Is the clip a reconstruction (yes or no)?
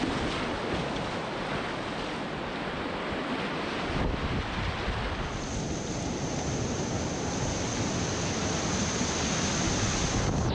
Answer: no